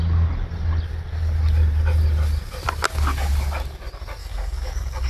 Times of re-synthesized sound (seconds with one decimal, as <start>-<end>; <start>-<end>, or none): 4.2-5.1